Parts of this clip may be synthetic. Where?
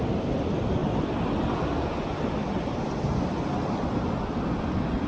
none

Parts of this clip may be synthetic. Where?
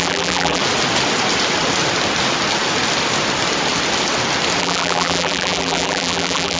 0.0-0.6 (vocoder, BigVGAN v2); 4.6-6.6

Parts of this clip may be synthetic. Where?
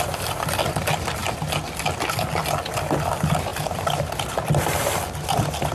3.5-4.1 (vocoder, BigVGAN v2)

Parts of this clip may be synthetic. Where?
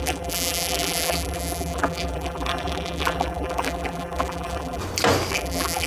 0.0-4.8 (vocoder, BigVGAN v2); 5.3-5.9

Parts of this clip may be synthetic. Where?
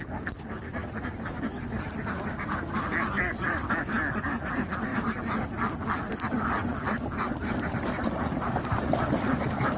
none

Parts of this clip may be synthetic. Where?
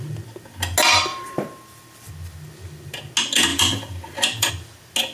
1.1-2.1 (vocoder, BigVGAN v2); 3.5-4.5